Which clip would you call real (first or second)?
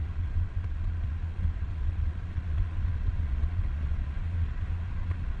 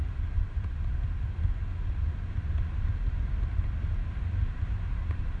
second